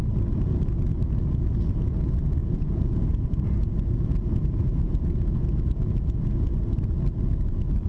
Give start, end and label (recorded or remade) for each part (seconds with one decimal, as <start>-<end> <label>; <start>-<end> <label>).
0.0-2.4 recorded; 2.4-5.8 remade; 5.8-7.9 recorded